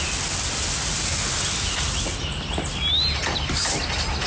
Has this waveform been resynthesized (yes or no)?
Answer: no